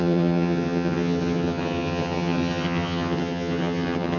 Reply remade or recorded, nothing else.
remade